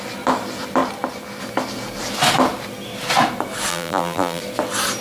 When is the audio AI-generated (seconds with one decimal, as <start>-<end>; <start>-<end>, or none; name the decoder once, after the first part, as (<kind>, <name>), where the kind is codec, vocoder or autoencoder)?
3.7-4.4 (vocoder, BigVGAN v2)